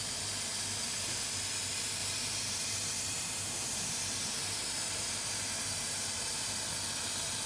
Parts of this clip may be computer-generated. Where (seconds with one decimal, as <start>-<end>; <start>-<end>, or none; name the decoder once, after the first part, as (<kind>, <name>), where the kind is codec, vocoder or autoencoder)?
2.0-6.5 (vocoder, BigVGAN v2)